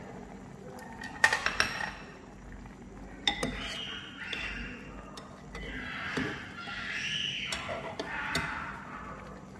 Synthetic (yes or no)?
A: no